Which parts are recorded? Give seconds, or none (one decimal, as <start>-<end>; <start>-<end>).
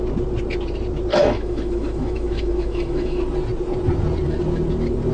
0.0-1.1; 3.2-5.1